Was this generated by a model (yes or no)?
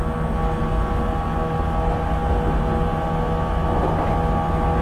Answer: no